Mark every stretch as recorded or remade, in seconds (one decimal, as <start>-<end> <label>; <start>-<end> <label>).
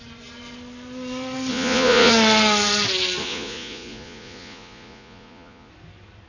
0.0-1.5 recorded; 1.5-2.1 remade; 2.1-3.2 recorded; 3.2-5.7 remade; 5.7-6.3 recorded